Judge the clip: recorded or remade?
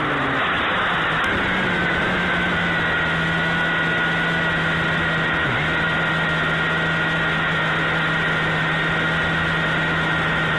recorded